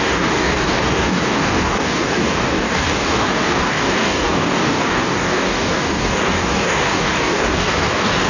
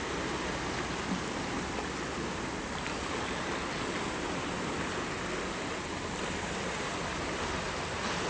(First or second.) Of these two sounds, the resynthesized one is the first